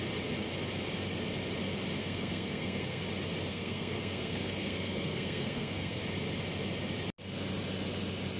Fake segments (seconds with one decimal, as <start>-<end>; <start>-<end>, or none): 2.0-3.0; 3.5-6.0